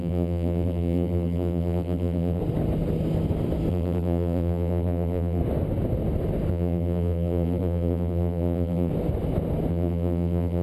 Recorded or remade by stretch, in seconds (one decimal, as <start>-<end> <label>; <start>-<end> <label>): 0.0-2.4 remade; 2.4-3.7 recorded; 3.7-5.4 remade; 5.4-6.5 recorded; 6.5-8.9 remade; 8.9-9.7 recorded; 9.7-10.6 remade